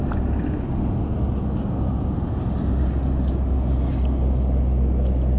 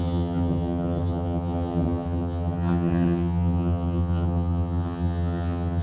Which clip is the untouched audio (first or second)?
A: first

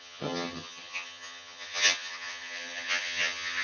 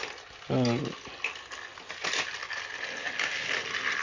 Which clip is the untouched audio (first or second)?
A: second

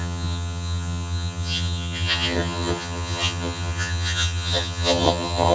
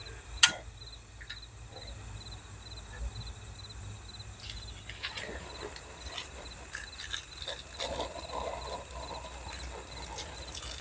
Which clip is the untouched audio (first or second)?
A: second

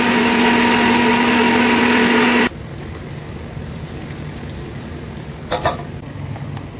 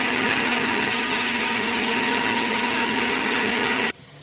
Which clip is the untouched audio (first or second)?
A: first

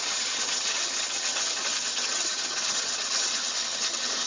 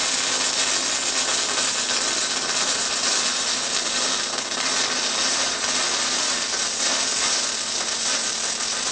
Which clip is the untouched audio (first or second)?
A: second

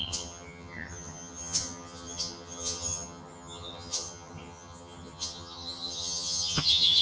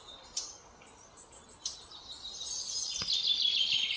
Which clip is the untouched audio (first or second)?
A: second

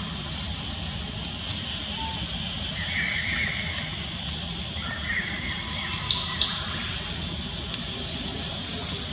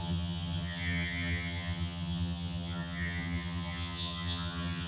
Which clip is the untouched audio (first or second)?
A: first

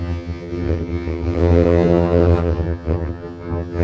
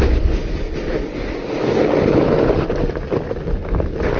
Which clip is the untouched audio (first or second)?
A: second